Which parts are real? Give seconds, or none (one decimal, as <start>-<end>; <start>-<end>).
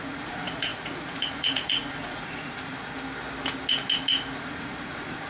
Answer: 2.7-4.4